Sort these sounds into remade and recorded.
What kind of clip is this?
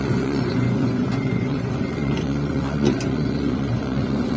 remade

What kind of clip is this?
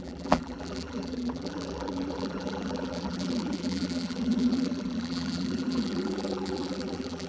remade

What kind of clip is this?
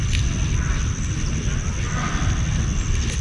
recorded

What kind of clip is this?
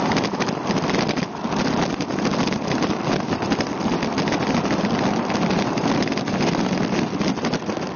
recorded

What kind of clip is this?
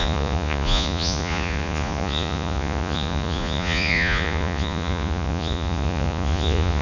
remade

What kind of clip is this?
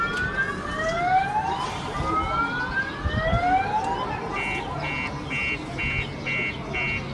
recorded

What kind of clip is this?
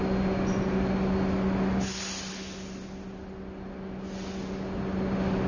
recorded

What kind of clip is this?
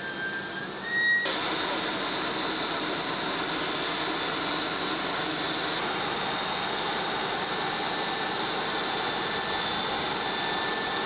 recorded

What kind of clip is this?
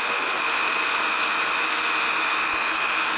recorded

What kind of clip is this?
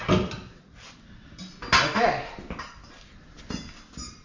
recorded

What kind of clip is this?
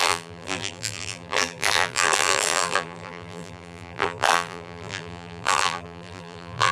remade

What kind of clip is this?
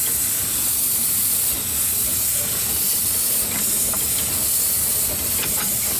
recorded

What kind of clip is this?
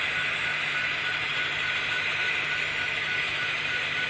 recorded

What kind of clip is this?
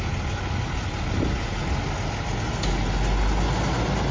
recorded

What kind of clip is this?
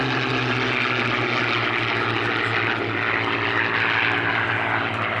recorded